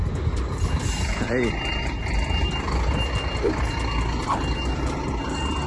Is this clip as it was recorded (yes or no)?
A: yes